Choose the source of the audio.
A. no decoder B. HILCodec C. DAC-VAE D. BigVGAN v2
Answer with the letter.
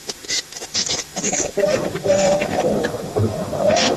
C